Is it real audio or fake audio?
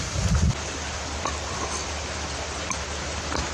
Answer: real